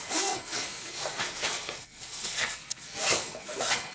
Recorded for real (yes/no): no